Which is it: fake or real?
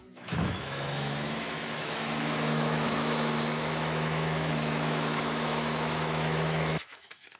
fake